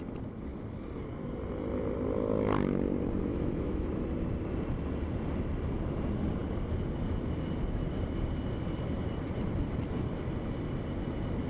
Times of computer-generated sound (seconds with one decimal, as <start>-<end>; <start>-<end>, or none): 3.3-3.9